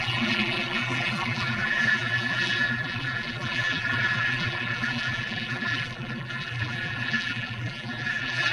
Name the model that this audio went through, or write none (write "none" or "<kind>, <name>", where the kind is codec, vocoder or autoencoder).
vocoder, BigVGAN v2